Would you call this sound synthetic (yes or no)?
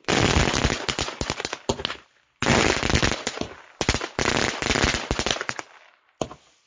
no